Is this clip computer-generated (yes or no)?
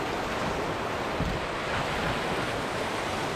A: no